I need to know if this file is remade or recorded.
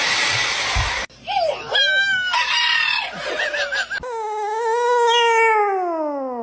recorded